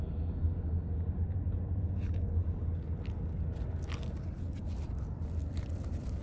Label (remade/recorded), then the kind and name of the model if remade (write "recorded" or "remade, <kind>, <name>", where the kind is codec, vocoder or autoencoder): recorded